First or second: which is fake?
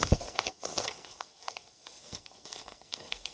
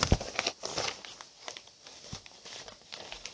first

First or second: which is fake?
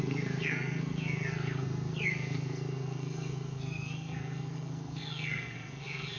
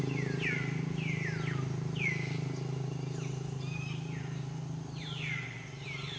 first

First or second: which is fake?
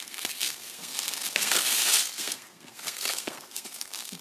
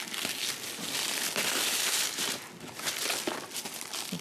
first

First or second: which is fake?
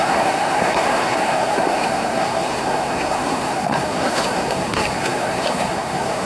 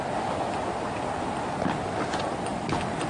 first